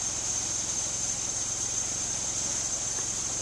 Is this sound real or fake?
fake